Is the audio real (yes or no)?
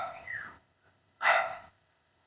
no